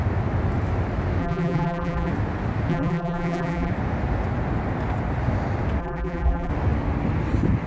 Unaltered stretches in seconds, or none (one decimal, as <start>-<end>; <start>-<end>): 0.0-1.2; 2.1-2.7; 3.7-5.8; 6.5-7.7